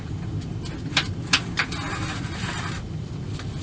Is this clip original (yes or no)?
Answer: yes